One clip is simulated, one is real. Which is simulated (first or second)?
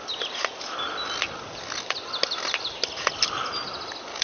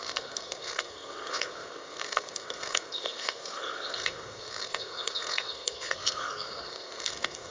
second